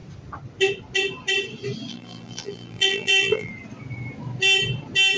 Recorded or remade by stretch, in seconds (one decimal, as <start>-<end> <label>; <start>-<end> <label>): 0.0-1.9 recorded; 1.9-3.5 remade; 3.5-5.2 recorded